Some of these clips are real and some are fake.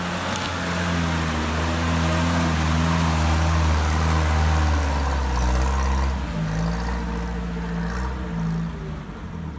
real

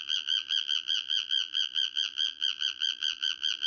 fake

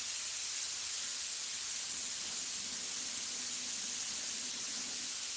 real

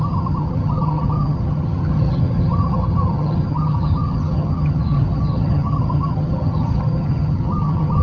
fake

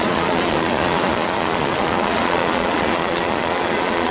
fake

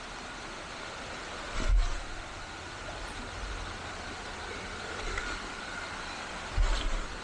real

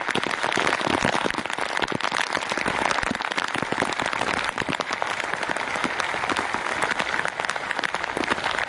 real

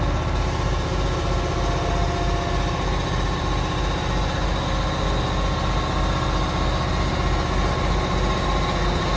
real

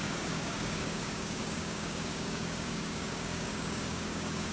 fake